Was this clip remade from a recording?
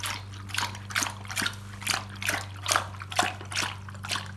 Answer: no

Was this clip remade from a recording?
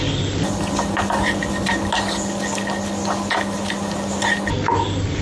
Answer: no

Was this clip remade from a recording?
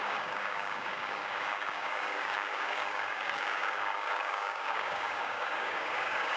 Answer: yes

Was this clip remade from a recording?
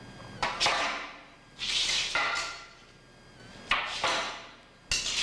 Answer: no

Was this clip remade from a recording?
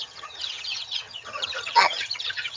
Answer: yes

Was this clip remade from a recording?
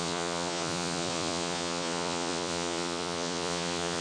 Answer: yes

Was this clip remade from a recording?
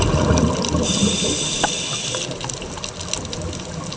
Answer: no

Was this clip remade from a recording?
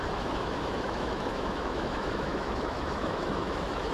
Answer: yes